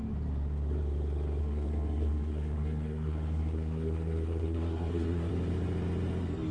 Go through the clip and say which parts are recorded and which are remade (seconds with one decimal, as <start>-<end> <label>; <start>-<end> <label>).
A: 0.0-1.4 recorded; 1.4-5.3 remade; 5.3-6.5 recorded